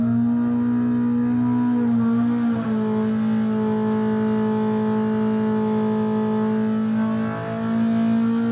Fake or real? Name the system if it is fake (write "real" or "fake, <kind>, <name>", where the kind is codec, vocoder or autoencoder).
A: real